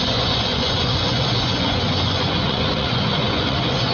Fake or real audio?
fake